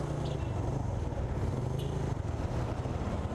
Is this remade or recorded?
recorded